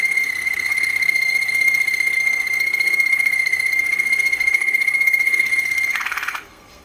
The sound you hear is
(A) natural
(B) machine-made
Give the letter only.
B